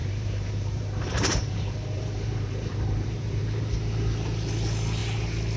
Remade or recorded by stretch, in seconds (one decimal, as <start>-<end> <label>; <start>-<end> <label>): 0.0-3.4 remade; 3.4-5.6 recorded

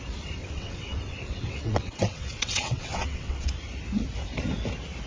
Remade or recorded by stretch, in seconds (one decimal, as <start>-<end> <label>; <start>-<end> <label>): 0.0-0.4 recorded; 0.4-3.5 remade; 3.5-5.1 recorded

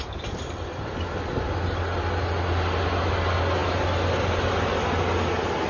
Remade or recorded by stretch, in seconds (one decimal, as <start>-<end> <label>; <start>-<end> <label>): 0.0-5.7 recorded

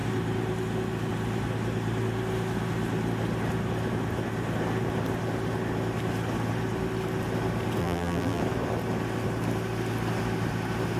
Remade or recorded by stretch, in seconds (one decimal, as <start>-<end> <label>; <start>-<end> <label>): 0.0-7.8 recorded; 7.8-8.4 remade; 8.4-11.0 recorded

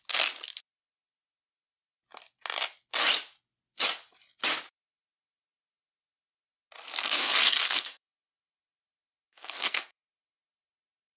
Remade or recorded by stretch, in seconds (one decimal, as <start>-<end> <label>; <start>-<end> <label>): 0.0-7.0 recorded; 7.0-11.2 remade

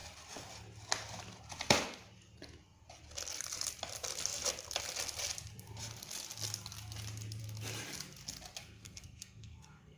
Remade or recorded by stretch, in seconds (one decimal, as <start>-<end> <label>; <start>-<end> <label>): 0.0-8.6 recorded; 8.6-10.0 remade

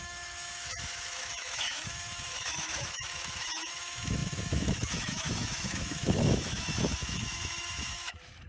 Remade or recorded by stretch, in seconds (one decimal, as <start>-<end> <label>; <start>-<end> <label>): 0.0-8.5 remade